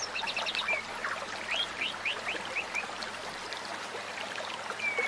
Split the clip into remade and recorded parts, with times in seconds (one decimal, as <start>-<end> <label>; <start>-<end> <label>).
0.0-1.0 recorded; 1.0-3.0 remade; 3.0-3.7 recorded; 3.7-4.5 remade; 4.5-5.1 recorded